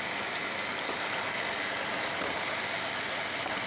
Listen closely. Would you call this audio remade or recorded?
recorded